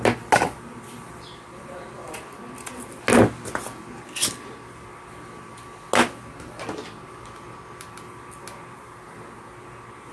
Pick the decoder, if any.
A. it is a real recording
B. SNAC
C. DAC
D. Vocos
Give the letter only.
A